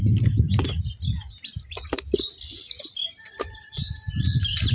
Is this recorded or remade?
recorded